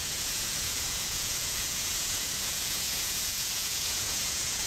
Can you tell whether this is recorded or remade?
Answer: remade